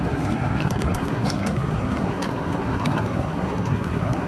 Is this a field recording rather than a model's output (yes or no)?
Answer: no